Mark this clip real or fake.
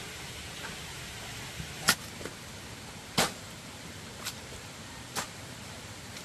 real